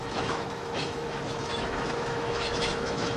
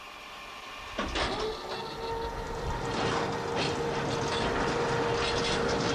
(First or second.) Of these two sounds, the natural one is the second